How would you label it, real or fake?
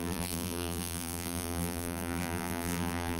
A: fake